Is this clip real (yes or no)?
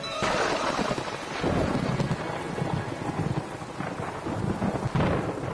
yes